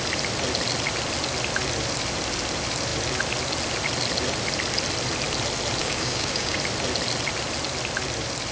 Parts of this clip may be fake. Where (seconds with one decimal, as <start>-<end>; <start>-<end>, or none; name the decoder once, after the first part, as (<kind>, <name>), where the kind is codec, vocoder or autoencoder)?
5.8-6.6 (codec, DAC)